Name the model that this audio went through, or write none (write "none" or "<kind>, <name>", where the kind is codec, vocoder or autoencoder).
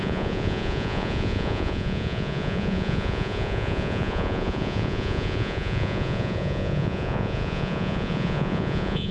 vocoder, Vocos